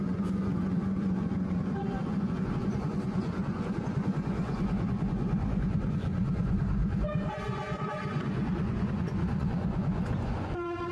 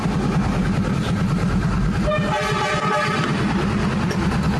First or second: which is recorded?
second